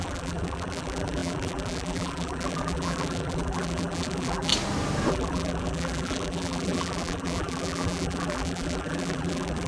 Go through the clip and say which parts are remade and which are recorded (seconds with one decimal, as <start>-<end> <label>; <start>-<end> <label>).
0.0-4.5 remade; 4.5-5.1 recorded; 5.1-9.7 remade